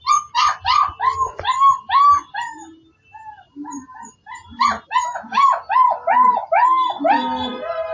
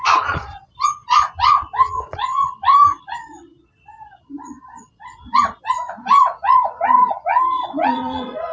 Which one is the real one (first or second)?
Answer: first